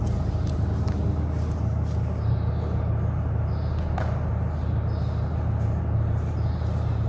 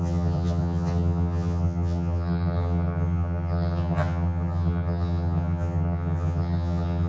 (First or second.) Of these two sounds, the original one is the first